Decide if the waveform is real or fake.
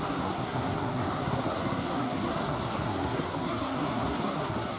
fake